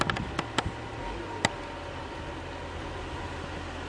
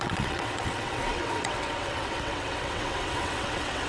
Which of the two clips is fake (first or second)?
second